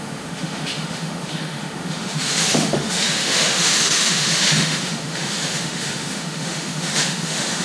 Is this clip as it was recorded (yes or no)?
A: no